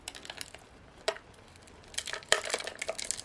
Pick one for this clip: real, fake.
real